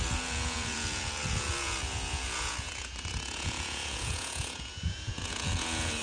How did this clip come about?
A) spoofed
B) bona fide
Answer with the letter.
A